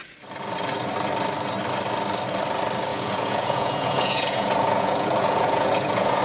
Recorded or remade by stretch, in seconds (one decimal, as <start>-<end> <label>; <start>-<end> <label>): 0.0-2.9 recorded; 2.9-6.2 remade